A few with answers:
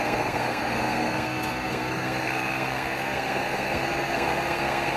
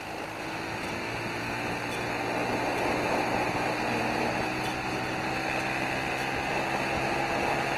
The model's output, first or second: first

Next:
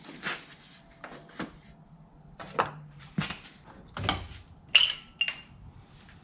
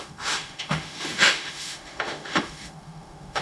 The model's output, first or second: second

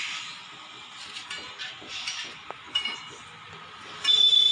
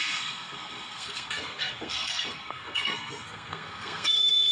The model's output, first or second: second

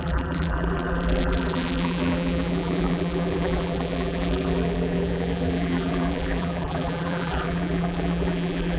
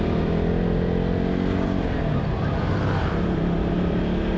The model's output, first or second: first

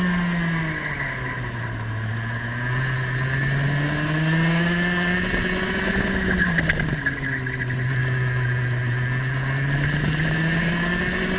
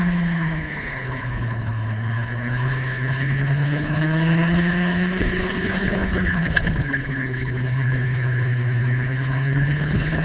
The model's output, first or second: second